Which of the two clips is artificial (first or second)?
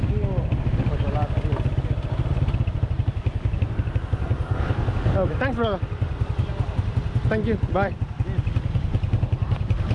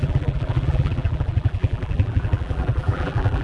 second